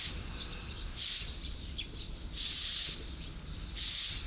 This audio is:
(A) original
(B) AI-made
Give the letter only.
A